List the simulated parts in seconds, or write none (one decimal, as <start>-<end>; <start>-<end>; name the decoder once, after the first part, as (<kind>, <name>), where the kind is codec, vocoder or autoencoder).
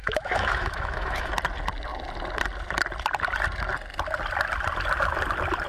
0.0-1.3 (autoencoder, DAC-VAE)